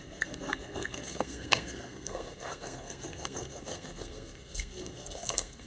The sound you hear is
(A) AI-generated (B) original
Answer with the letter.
A